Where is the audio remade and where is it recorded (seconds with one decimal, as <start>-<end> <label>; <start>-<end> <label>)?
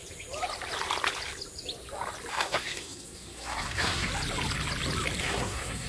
0.0-2.3 recorded; 2.3-4.1 remade; 4.1-5.2 recorded; 5.2-5.9 remade